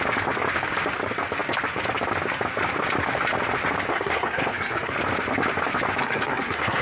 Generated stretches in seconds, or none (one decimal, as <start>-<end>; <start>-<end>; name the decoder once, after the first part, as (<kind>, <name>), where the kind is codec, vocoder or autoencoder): 3.9-4.9 (codec, SNAC); 6.0-6.8